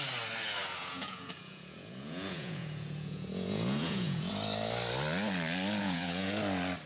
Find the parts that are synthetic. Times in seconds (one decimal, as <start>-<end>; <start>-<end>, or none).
0.8-4.3; 5.8-6.4